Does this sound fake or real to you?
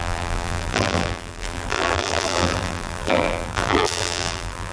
fake